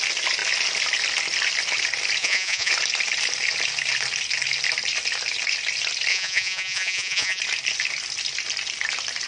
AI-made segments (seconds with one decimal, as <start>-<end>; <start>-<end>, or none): 2.2-2.7; 6.1-7.4